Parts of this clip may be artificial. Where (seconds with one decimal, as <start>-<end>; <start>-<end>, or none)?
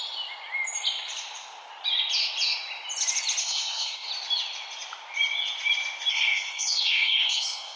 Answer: 3.4-4.1; 6.1-7.8